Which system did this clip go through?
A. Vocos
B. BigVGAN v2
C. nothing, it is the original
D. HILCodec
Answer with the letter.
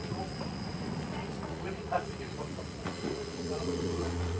A